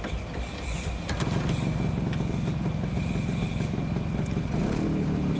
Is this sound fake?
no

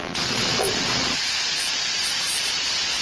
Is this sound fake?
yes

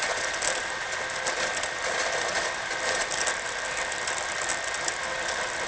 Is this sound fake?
no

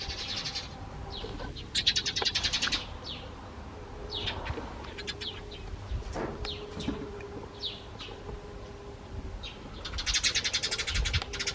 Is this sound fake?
no